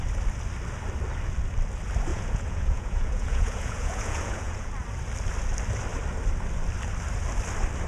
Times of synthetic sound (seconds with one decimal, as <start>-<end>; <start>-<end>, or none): 2.1-4.7